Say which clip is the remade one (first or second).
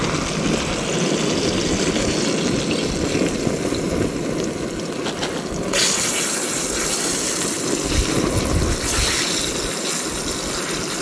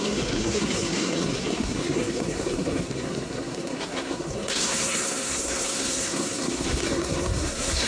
second